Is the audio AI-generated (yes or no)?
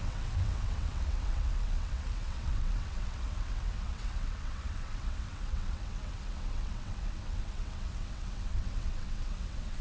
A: yes